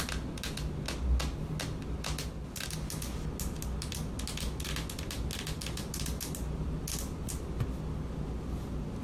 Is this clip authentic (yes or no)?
yes